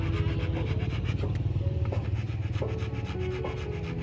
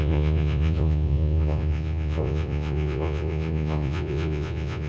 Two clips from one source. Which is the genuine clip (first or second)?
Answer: first